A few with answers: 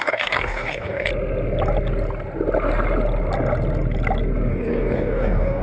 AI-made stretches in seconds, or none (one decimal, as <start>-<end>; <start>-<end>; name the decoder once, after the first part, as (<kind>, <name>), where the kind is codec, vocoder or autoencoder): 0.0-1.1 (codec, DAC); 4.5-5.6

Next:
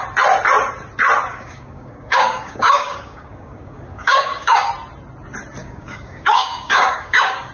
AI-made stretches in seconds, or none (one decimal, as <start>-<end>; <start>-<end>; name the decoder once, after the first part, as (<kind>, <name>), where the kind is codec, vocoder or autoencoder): 1.3-4.7 (codec, DAC); 5.6-7.5

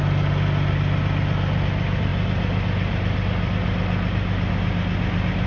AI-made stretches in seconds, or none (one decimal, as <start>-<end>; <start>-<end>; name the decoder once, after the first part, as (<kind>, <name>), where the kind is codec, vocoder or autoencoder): none